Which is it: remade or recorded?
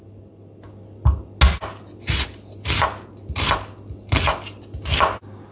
recorded